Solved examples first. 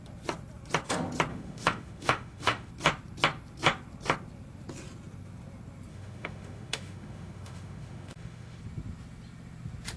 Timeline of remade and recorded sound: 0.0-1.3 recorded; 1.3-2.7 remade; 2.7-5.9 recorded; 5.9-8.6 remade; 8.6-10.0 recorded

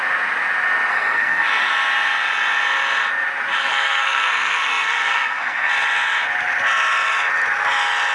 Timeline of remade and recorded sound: 0.0-0.9 recorded; 0.9-1.7 remade; 1.7-3.6 recorded; 3.6-5.7 remade; 5.7-8.1 recorded

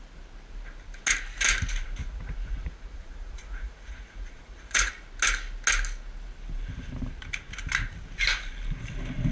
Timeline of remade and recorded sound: 0.0-2.0 recorded; 2.0-4.9 remade; 4.9-9.3 recorded

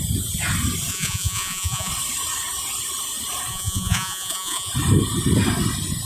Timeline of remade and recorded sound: 0.0-0.9 recorded; 0.9-1.9 remade; 1.9-3.5 recorded; 3.5-4.7 remade; 4.7-6.1 recorded

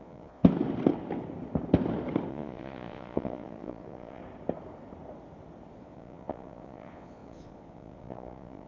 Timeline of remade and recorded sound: 0.0-0.4 remade; 0.4-2.3 recorded; 2.3-4.2 remade; 4.2-5.8 recorded; 5.8-8.7 remade

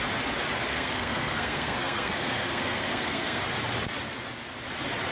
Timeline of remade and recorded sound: 0.0-0.7 recorded; 0.7-3.4 remade; 3.4-5.1 recorded

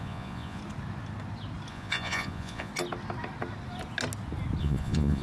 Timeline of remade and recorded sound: 0.0-0.6 remade; 0.6-1.7 recorded; 1.7-2.7 remade; 2.7-4.6 recorded; 4.6-5.2 remade